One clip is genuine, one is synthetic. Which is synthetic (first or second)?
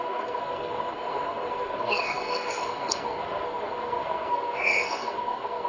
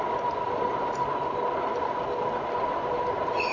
first